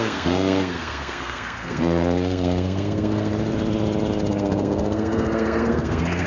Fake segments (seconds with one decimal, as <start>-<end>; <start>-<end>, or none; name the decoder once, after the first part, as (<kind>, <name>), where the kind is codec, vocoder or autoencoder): 0.0-3.3 (codec, SNAC); 4.3-6.3